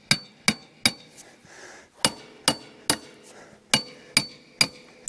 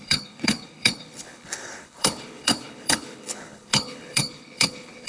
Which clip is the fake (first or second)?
second